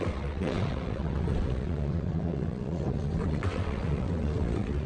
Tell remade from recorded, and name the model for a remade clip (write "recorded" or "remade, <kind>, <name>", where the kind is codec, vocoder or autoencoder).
remade, vocoder, WaveNeXt